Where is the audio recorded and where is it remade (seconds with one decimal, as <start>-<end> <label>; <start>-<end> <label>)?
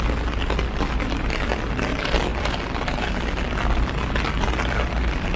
0.0-5.4 recorded